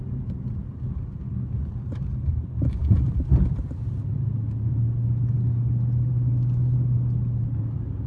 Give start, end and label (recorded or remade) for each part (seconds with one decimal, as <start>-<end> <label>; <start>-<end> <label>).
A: 0.0-8.1 recorded